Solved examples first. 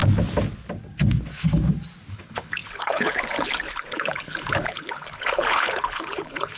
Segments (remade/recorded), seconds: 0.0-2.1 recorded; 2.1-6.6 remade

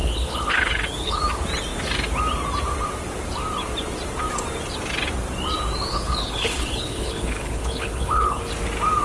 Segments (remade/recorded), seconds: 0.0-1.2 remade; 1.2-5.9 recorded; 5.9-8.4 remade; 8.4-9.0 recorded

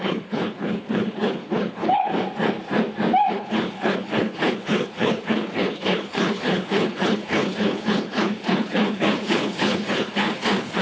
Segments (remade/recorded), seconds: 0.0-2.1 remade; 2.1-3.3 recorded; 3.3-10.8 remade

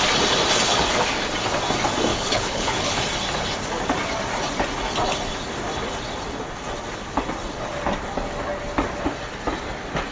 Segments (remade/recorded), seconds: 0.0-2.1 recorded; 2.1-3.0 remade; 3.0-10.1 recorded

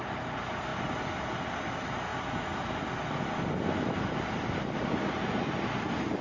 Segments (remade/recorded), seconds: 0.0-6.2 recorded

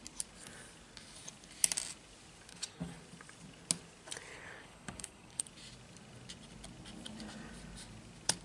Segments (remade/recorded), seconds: 0.0-2.5 recorded; 2.5-3.0 remade; 3.0-4.3 recorded; 4.3-5.4 remade; 5.4-8.4 recorded